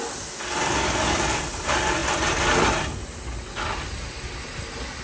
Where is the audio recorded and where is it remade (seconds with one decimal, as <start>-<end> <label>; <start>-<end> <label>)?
0.0-5.0 recorded

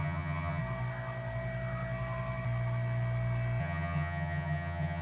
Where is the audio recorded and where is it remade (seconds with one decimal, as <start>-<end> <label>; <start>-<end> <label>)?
0.0-0.6 remade; 0.6-3.6 recorded; 3.6-5.0 remade

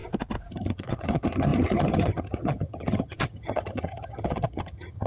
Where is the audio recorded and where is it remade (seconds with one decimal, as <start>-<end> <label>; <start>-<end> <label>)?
0.0-0.5 recorded; 0.5-5.1 remade

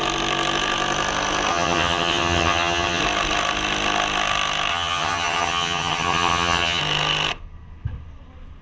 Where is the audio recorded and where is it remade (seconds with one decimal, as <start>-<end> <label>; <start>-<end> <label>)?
0.0-1.5 recorded; 1.5-3.0 remade; 3.0-4.7 recorded; 4.7-6.8 remade; 6.8-8.6 recorded

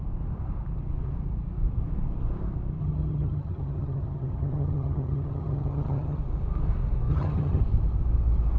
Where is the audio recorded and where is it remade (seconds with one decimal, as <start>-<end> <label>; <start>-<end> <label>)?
0.0-2.8 recorded; 2.8-6.2 remade; 6.2-7.1 recorded; 7.1-7.6 remade; 7.6-8.6 recorded

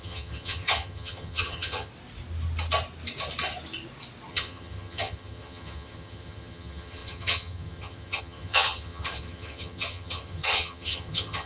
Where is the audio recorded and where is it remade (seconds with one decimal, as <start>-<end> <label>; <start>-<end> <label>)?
0.0-1.9 remade; 1.9-4.3 recorded; 4.3-11.5 remade

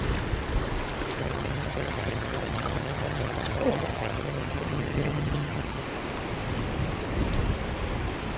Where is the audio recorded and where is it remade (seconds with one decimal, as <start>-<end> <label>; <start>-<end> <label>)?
0.0-1.2 recorded; 1.2-5.8 remade; 5.8-8.4 recorded

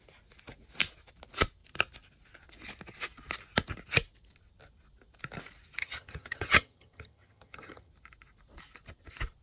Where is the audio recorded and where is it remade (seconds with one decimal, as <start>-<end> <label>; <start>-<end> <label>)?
0.0-5.8 recorded; 5.8-7.9 remade; 7.9-9.4 recorded